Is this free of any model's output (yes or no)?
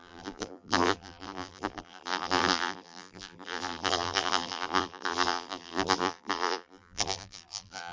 no